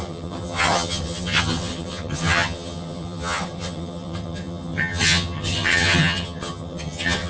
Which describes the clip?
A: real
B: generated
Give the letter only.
B